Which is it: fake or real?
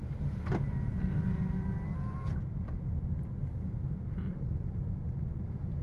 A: real